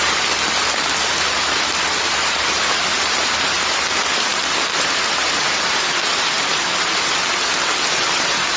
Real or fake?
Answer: fake